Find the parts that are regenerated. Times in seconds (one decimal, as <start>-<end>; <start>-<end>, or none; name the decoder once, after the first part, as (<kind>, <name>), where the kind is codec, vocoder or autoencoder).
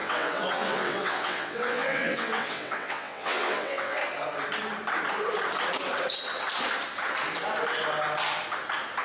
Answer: 0.0-4.0 (vocoder, WaveNeXt)